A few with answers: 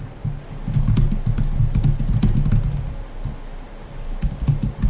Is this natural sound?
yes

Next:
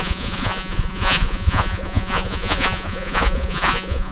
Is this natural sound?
no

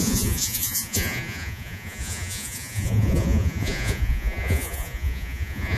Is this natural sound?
no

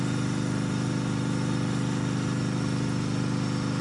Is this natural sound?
yes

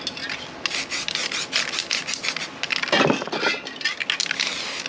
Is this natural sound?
yes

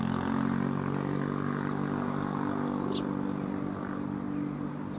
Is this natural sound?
yes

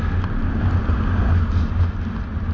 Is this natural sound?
yes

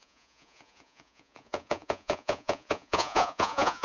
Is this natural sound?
no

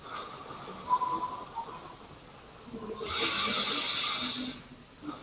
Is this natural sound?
yes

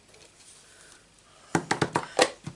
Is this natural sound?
yes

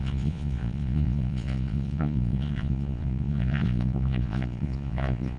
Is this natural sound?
no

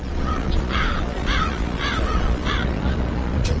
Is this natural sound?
no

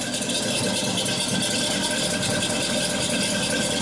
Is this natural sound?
yes